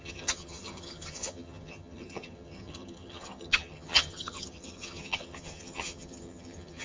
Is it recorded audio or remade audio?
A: remade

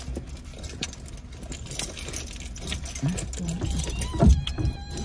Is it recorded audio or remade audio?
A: recorded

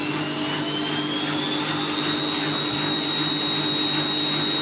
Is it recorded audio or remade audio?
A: recorded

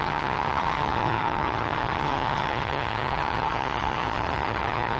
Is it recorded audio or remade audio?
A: remade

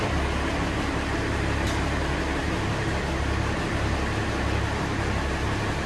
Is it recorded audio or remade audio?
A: recorded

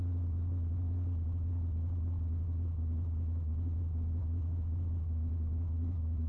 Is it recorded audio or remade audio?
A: recorded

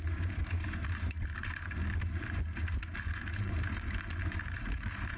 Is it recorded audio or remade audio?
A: remade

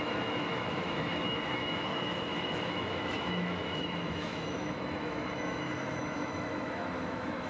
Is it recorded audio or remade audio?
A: remade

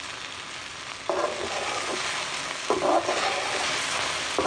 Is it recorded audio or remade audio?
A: recorded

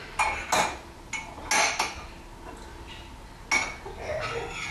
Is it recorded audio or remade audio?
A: recorded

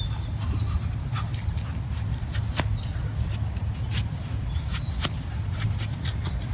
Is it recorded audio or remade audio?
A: recorded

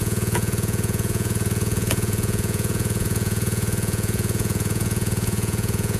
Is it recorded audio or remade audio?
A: remade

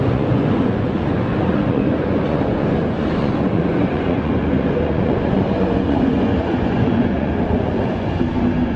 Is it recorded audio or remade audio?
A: remade